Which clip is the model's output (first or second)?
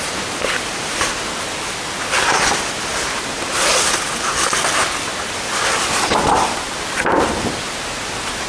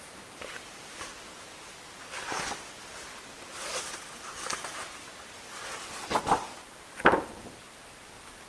second